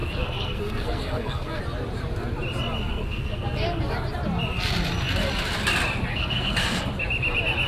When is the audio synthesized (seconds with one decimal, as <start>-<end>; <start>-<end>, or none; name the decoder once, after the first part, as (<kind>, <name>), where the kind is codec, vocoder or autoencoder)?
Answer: 0.0-1.6 (codec, SNAC); 2.9-3.8; 6.1-6.9